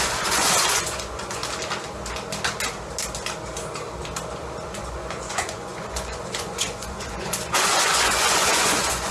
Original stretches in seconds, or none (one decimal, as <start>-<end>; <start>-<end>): 1.4-4.7